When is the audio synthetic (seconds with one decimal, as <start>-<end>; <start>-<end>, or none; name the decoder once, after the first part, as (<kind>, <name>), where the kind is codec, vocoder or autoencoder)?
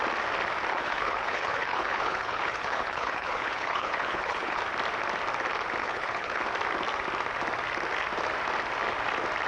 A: 0.7-4.6 (codec, HILCodec); 5.8-6.4